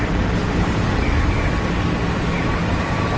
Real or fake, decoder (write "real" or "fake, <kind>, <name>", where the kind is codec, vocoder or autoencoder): real